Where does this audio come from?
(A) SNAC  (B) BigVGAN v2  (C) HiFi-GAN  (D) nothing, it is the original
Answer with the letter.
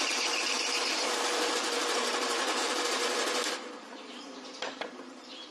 B